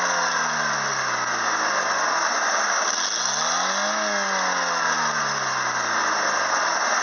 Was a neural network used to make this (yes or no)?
no